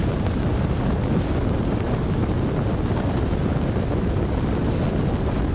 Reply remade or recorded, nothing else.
recorded